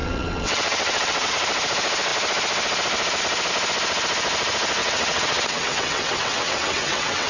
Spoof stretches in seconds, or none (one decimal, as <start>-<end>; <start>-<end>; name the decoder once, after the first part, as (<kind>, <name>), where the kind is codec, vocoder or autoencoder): 0.0-1.3 (vocoder, WaveNeXt); 4.8-7.3